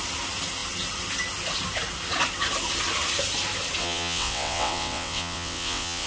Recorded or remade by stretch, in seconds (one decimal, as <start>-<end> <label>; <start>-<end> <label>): 0.0-3.8 recorded; 3.8-6.1 remade